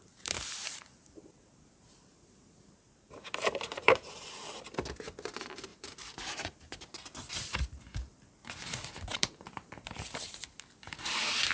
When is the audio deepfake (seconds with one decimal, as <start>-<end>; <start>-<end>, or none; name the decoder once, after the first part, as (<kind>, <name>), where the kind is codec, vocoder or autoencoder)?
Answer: 0.6-4.1 (vocoder, BigVGAN v2); 5.7-6.8; 9.1-11.0